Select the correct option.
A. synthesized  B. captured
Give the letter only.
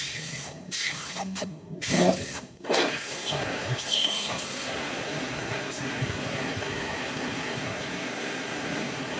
A